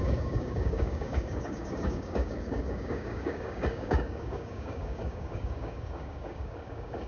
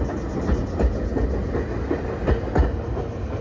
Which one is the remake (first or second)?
first